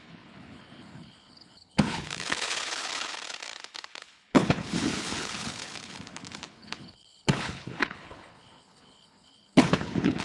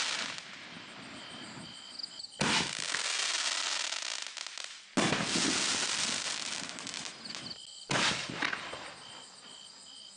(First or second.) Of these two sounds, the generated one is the first